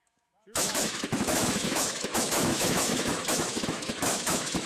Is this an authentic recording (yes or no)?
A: no